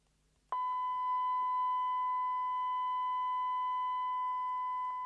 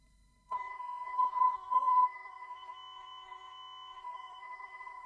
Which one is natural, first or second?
first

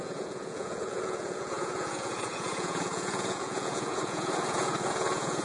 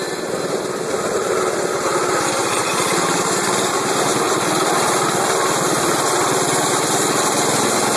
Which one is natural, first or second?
second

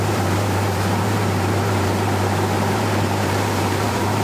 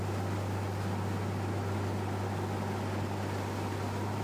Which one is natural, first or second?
second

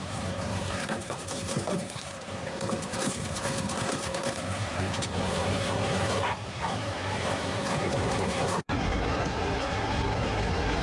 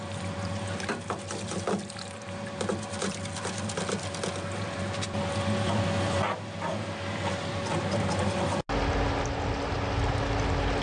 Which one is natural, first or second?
second